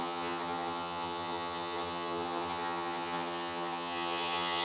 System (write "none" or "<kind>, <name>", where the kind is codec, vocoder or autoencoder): vocoder, HiFi-GAN